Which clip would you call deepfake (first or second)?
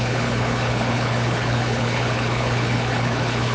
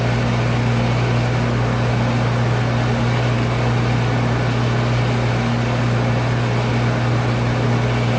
first